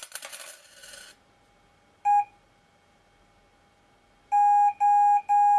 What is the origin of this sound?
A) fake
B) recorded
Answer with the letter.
B